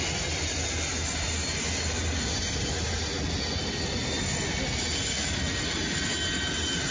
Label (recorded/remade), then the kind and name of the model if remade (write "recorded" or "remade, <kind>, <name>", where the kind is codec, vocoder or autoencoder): recorded